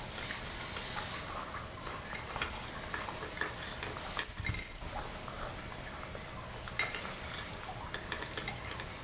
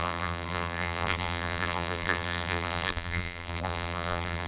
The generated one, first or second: second